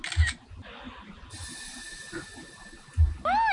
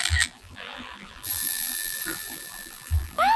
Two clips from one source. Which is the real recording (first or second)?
first